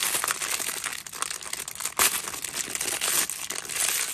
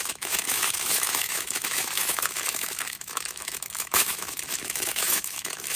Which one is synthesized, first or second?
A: second